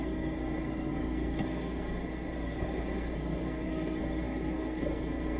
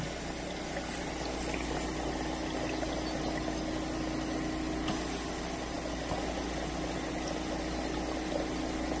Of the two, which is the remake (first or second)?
first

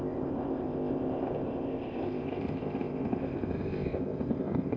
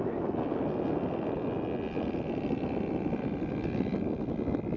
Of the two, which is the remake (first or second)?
first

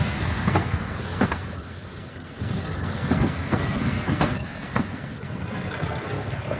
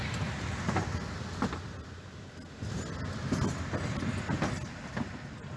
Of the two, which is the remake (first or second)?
first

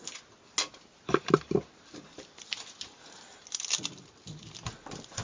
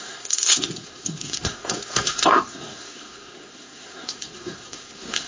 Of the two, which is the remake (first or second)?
second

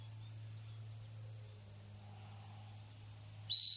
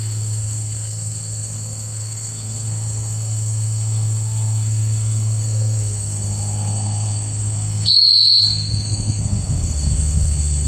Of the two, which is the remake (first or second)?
second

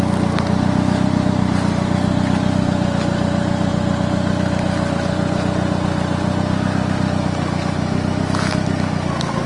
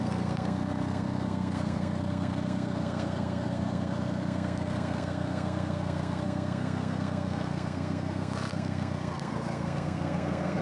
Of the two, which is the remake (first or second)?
second